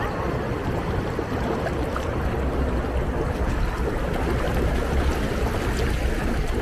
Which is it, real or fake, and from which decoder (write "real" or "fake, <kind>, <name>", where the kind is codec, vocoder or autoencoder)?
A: real